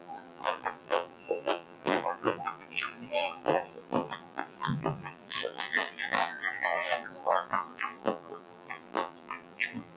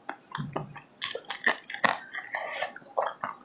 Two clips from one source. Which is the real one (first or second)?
second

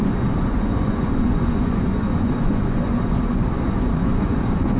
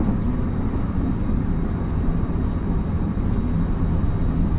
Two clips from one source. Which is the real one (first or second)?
second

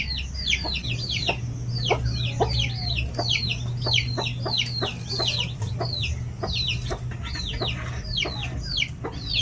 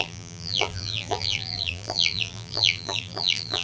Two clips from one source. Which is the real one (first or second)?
first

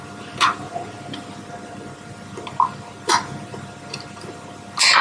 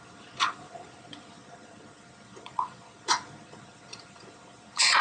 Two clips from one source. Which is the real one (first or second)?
first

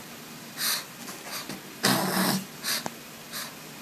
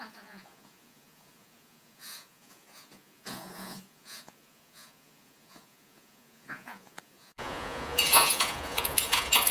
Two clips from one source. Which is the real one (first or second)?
first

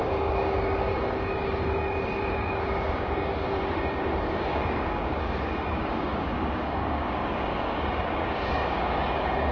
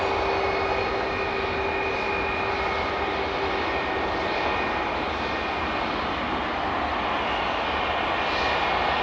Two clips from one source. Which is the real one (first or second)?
second